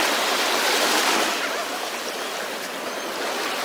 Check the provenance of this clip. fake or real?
real